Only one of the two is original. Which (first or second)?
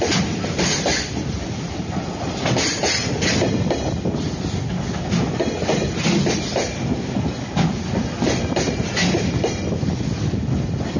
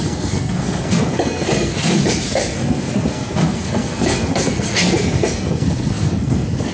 first